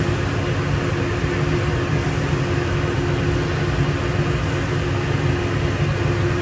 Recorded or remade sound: recorded